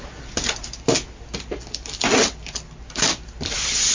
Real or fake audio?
real